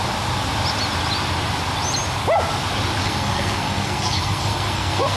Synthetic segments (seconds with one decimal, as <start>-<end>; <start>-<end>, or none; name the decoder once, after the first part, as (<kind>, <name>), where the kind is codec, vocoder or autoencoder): 3.0-5.2 (codec, SNAC)